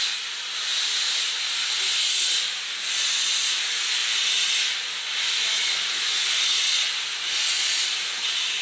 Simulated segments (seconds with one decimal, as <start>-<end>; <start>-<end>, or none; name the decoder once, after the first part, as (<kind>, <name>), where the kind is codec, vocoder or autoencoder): none